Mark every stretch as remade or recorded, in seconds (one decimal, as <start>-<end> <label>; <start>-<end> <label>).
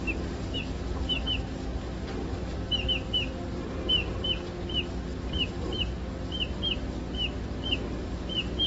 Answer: 0.0-8.7 recorded